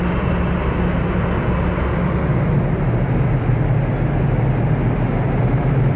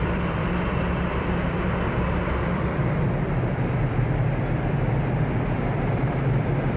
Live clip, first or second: first